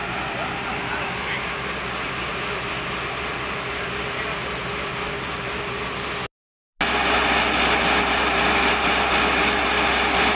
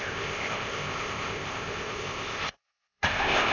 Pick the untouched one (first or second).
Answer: first